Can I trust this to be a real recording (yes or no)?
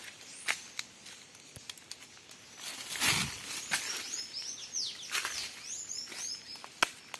yes